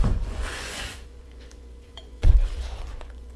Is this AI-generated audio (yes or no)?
yes